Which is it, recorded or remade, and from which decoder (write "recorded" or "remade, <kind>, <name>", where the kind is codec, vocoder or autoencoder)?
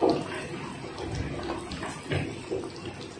recorded